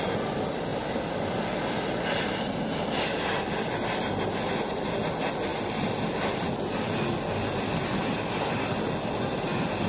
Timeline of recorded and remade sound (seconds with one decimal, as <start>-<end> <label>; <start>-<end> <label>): 0.0-9.9 recorded